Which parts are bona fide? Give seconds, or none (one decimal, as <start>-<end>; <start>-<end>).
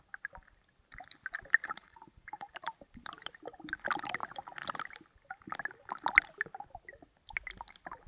0.0-1.6; 2.5-8.1